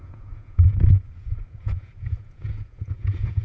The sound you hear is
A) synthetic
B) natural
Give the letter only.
A